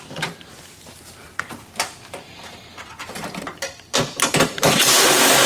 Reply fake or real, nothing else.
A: fake